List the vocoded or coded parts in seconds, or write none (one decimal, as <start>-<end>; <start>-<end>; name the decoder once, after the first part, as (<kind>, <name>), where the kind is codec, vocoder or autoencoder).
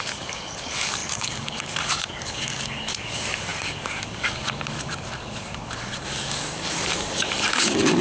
0.0-8.0 (codec, DAC)